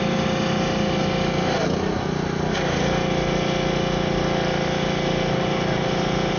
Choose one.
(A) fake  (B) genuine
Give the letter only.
B